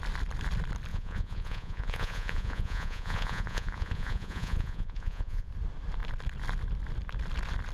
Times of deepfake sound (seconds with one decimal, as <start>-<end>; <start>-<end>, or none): 0.9-5.5